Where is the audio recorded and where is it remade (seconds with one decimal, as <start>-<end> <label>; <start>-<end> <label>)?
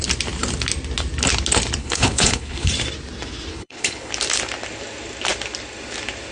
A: 0.0-1.8 recorded; 1.8-2.7 remade; 2.7-3.5 recorded; 3.5-4.1 remade; 4.1-6.3 recorded